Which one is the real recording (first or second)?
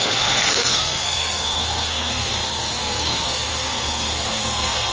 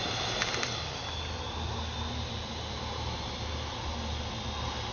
second